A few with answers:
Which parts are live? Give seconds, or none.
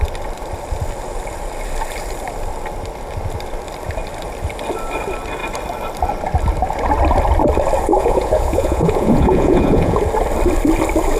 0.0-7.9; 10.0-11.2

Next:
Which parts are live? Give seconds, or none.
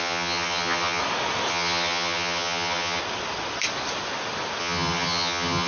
1.0-1.5; 3.0-4.6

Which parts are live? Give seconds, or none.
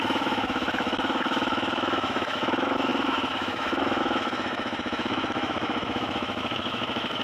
none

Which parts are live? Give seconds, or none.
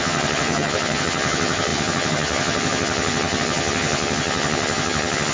none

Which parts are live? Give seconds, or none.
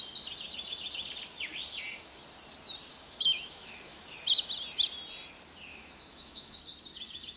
0.0-2.9; 4.1-5.7; 6.6-7.4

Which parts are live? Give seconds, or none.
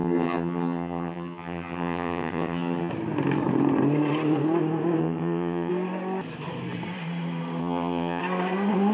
2.9-5.0; 5.7-7.6; 8.2-8.9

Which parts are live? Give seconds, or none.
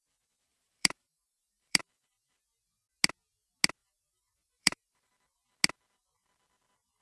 0.0-0.5; 1.8-3.8; 5.1-7.0